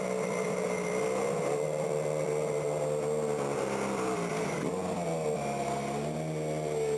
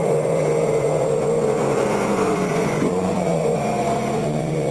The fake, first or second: second